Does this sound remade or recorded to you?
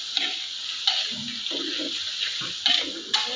recorded